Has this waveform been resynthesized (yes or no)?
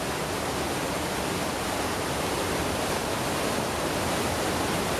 no